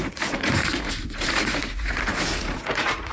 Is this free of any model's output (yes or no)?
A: no